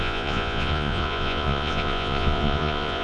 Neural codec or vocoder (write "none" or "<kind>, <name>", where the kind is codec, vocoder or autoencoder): vocoder, Vocos